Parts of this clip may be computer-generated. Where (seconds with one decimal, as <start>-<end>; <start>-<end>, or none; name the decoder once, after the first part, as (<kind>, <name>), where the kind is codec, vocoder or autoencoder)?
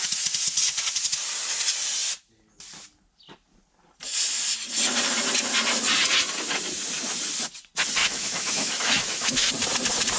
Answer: 8.0-9.5 (autoencoder, DAC-VAE)